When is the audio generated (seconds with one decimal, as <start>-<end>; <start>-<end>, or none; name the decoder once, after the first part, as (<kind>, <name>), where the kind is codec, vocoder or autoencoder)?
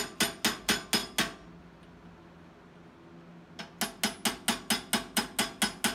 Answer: none